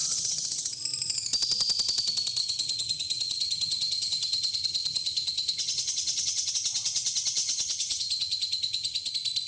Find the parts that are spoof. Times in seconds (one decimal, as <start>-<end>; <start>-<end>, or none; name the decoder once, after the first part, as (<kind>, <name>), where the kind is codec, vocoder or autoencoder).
0.0-0.8 (vocoder, HiFi-GAN); 2.4-6.5; 7.4-9.1